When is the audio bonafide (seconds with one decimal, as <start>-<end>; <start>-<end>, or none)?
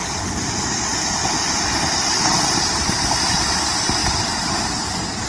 1.2-1.8; 4.0-4.6